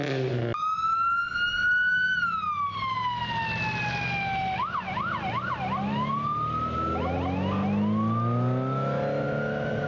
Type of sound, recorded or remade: recorded